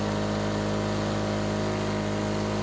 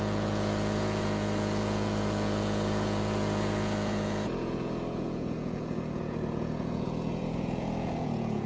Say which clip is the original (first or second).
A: first